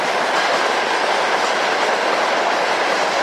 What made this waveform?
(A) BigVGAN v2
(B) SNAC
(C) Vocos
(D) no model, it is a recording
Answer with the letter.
A